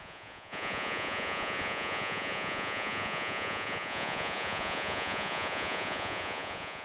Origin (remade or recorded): remade